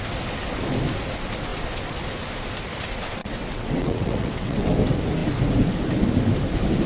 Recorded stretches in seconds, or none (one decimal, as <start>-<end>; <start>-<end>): 0.0-3.2; 4.7-6.9